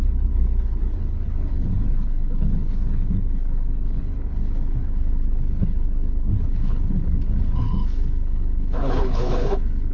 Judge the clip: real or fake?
fake